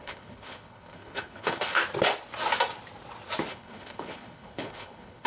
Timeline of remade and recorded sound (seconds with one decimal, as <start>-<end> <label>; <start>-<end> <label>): 0.0-1.8 remade; 1.8-3.5 recorded; 3.5-5.3 remade